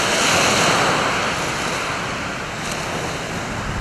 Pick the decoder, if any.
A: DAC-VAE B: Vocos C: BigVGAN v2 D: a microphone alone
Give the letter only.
D